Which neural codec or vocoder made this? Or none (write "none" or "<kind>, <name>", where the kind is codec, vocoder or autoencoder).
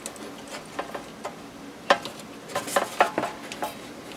none